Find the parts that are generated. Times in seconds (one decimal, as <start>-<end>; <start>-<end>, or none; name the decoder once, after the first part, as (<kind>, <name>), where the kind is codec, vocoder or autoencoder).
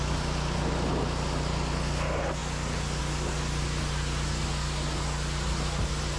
none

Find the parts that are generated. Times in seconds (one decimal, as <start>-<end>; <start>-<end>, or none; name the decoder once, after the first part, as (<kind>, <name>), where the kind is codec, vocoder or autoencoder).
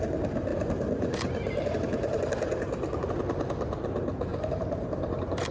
0.5-3.1 (vocoder, BigVGAN v2); 4.3-5.5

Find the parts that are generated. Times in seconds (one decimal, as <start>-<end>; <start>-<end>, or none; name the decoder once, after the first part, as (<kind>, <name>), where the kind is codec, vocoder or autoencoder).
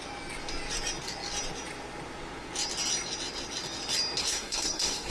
4.2-5.1 (codec, SNAC)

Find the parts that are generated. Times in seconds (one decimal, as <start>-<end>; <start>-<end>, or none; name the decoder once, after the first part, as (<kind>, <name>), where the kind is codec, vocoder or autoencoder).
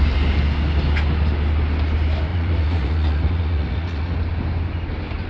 2.3-4.2 (vocoder, Vocos)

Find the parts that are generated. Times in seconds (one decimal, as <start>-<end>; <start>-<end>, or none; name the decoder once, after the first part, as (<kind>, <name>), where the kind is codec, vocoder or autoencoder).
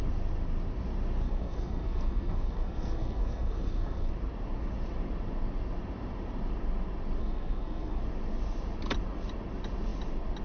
1.2-4.1 (codec, SNAC); 7.2-8.0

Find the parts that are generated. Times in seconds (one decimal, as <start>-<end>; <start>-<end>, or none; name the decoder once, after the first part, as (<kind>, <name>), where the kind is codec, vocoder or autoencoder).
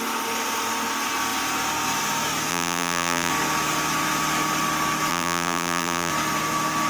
2.5-3.3 (vocoder, BigVGAN v2); 5.1-6.1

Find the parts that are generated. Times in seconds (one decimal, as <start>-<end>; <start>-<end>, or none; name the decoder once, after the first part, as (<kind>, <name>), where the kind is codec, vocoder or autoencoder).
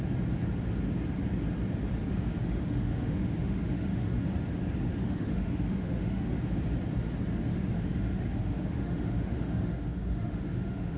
2.4-4.2 (autoencoder, DAC-VAE); 4.9-6.4; 7.5-11.0